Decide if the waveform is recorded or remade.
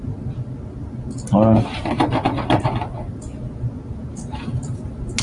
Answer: recorded